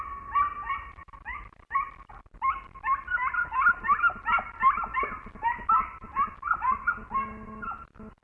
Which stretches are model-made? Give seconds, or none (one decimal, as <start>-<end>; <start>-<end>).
none